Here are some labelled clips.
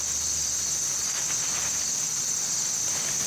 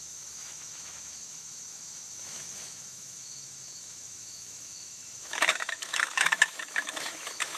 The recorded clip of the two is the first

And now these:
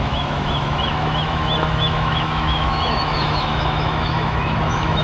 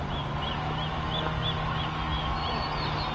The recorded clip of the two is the second